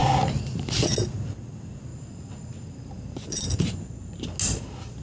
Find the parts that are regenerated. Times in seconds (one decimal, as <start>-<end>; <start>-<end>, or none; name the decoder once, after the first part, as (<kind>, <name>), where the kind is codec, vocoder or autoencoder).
1.9-4.2 (vocoder, BigVGAN v2)